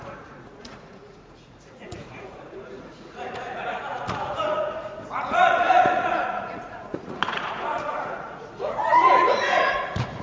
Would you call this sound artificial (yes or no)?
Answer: yes